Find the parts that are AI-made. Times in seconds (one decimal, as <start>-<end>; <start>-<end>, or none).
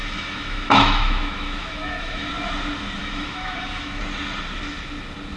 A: 0.0-2.3; 3.0-4.0